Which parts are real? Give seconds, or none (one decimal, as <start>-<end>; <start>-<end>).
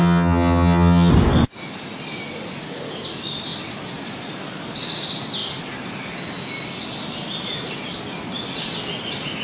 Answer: 1.1-9.4